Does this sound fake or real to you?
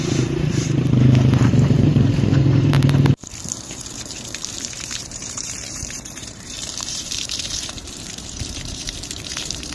fake